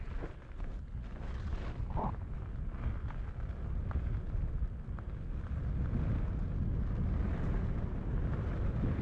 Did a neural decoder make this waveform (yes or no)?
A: no